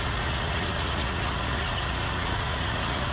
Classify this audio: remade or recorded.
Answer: remade